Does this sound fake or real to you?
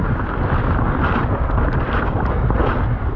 real